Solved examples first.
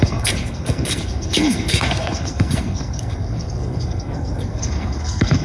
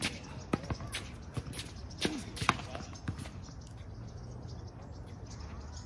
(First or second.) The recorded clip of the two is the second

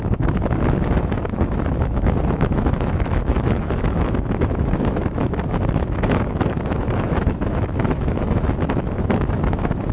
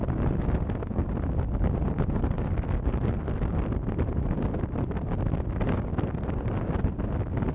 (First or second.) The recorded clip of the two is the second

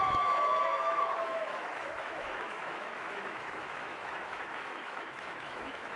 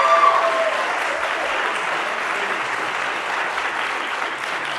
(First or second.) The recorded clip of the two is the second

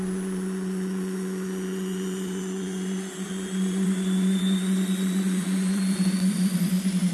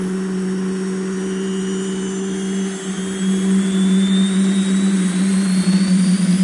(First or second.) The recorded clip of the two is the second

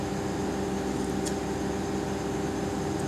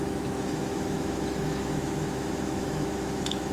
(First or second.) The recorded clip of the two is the first